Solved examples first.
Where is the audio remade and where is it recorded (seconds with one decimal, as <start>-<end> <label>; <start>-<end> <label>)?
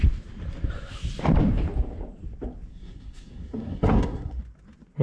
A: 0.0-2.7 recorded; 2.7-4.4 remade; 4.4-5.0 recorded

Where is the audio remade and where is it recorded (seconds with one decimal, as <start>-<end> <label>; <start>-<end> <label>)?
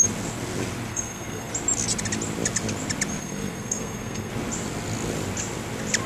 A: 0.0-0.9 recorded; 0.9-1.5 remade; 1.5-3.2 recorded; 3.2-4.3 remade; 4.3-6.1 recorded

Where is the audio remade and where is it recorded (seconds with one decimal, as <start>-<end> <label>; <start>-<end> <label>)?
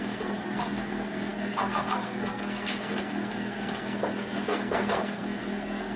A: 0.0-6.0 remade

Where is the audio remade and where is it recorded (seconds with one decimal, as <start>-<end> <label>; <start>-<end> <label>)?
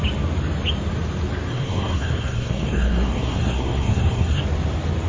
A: 0.0-1.5 recorded; 1.5-4.4 remade; 4.4-5.1 recorded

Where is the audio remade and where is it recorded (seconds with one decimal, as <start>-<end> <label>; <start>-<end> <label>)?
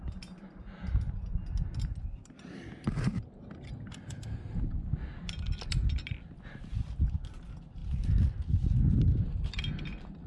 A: 0.0-10.3 recorded